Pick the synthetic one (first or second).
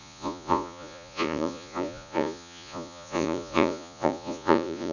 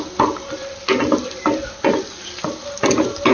first